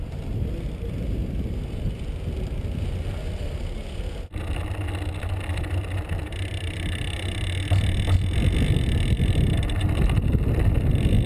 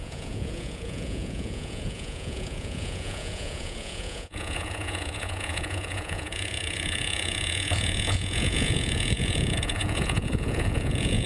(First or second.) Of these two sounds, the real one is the first